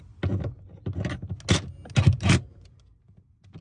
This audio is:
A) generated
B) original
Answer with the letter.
B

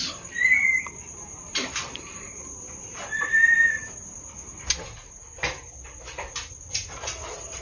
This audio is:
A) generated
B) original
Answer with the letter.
A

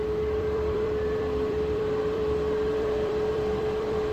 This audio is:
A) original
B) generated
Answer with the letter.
B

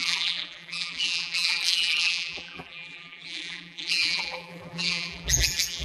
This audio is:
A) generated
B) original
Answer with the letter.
A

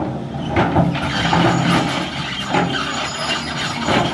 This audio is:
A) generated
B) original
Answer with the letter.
B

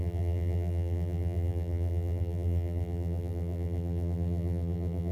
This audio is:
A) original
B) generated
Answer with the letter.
B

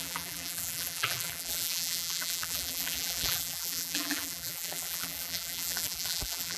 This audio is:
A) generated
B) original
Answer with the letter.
A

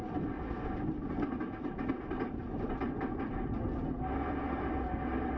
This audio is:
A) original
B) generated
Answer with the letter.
B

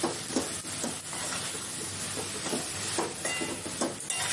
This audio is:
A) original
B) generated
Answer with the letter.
A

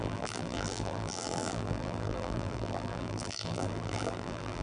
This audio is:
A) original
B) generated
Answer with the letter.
B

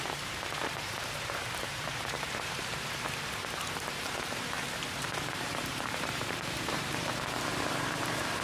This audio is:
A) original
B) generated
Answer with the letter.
B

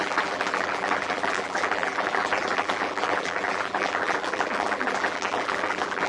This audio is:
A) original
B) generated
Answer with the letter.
B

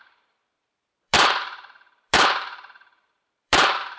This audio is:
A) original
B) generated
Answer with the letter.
B